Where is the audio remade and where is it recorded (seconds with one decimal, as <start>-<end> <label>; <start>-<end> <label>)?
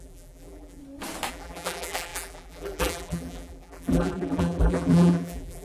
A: 0.0-0.8 remade; 0.8-1.3 recorded; 1.3-5.6 remade